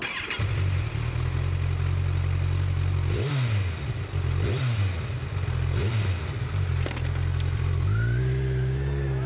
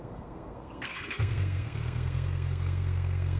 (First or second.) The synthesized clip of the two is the second